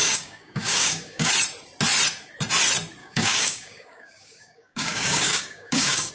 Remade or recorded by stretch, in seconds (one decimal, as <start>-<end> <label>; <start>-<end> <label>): 0.0-1.3 remade; 1.3-3.0 recorded; 3.0-6.1 remade